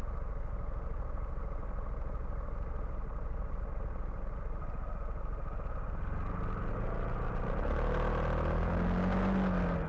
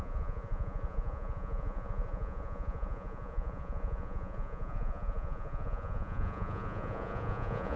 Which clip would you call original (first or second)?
first